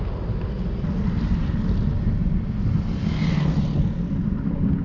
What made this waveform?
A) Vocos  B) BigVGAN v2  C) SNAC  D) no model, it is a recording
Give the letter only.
D